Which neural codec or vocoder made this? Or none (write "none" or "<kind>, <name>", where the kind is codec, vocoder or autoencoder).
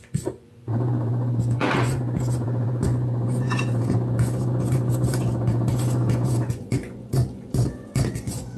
vocoder, Vocos